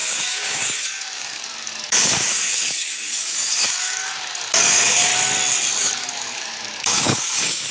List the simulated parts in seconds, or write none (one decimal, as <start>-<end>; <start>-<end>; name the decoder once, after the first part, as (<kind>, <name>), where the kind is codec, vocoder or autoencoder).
0.0-5.1 (codec, DAC); 5.8-7.7